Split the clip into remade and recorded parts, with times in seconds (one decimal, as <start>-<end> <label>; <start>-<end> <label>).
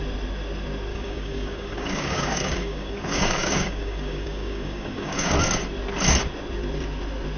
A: 0.0-0.9 recorded; 0.9-5.3 remade; 5.3-7.4 recorded